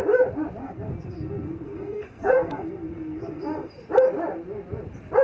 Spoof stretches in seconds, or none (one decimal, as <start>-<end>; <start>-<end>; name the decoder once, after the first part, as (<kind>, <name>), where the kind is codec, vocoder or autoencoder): 0.6-3.7 (codec, SNAC)